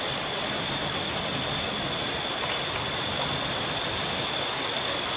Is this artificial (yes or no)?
no